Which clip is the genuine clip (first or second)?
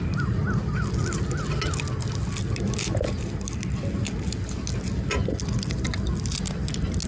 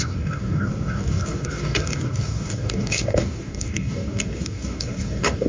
first